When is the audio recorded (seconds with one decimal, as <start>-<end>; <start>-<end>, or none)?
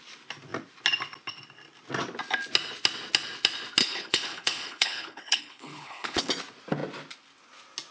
0.0-3.8; 6.3-7.9